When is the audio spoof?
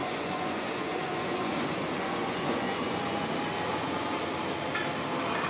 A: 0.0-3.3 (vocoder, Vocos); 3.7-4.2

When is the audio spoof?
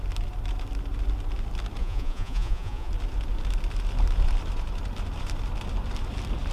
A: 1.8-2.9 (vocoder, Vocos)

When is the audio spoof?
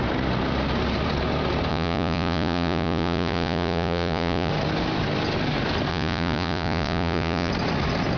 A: 1.7-4.5 (vocoder, Vocos); 5.9-7.5